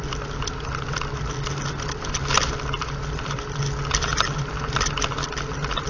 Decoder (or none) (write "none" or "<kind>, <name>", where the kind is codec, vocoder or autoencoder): none